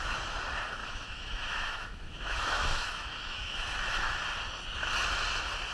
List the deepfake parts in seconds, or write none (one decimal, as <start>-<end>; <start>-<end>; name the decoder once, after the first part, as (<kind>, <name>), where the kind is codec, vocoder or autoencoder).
0.8-4.2 (autoencoder, DAC-VAE)